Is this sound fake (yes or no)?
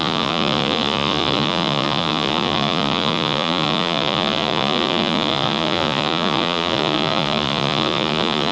yes